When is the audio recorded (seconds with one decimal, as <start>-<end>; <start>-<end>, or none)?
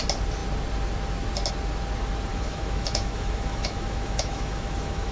0.0-2.3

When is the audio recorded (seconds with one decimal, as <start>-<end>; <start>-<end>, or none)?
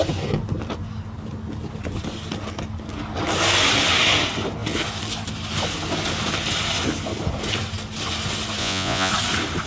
0.0-8.6; 9.1-9.7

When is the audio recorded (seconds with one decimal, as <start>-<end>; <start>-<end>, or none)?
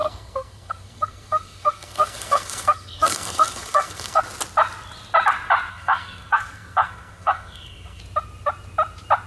4.2-5.7; 8.0-9.3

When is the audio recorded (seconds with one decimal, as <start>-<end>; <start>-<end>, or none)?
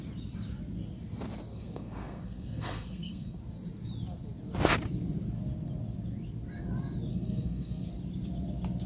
0.0-1.5; 3.4-7.1; 7.9-8.9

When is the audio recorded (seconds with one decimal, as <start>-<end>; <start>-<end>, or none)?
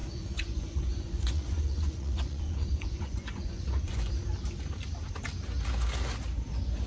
4.1-6.9